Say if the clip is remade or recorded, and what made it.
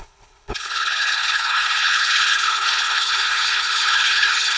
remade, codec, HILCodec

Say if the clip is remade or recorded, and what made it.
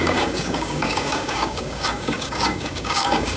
remade, codec, DAC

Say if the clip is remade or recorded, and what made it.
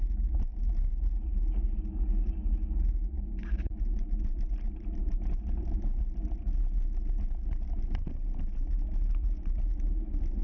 recorded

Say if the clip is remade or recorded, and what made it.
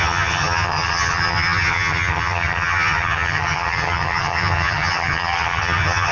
remade, vocoder, HiFi-GAN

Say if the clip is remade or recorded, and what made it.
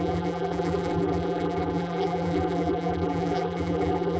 remade, vocoder, BigVGAN v2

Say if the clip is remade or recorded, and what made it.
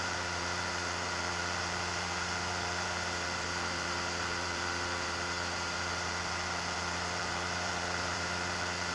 remade, vocoder, BigVGAN v2